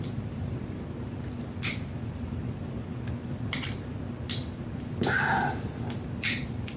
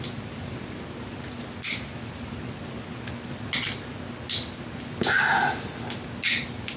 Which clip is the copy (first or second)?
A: first